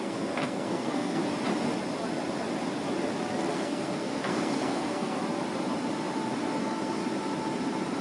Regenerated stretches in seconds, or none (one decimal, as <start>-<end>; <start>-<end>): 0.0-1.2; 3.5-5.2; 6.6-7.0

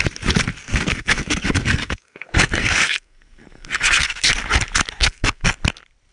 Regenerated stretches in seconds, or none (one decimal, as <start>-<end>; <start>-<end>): 0.6-4.3; 5.0-5.5

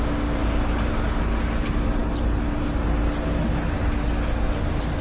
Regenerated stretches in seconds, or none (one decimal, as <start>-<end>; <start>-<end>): none